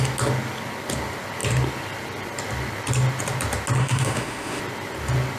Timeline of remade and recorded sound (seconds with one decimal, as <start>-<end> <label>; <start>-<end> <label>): 0.0-3.8 recorded; 3.8-4.6 remade; 4.6-5.4 recorded